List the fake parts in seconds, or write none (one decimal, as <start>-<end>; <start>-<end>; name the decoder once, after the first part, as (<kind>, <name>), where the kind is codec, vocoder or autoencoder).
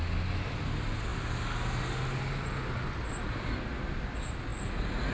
none